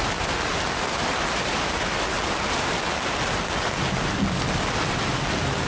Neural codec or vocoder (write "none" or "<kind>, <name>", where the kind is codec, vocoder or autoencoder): none